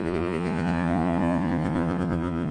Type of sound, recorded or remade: remade